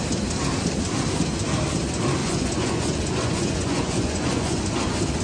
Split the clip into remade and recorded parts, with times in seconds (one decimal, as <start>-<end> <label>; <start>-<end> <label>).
0.0-2.2 recorded; 2.2-4.6 remade; 4.6-5.2 recorded